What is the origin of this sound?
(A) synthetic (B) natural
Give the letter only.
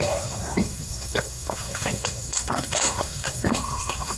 A